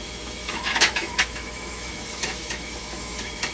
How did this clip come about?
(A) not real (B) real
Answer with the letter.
A